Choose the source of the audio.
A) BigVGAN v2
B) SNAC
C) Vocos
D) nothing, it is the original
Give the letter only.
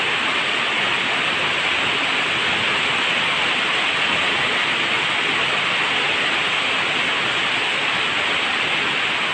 D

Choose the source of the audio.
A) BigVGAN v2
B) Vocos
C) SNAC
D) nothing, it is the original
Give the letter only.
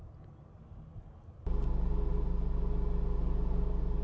D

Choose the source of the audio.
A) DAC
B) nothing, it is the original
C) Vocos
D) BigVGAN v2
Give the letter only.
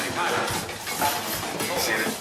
B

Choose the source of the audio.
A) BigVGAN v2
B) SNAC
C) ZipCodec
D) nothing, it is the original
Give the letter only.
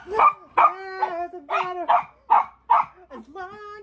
D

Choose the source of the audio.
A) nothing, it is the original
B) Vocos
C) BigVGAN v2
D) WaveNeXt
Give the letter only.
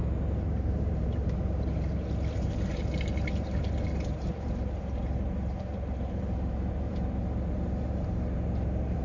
C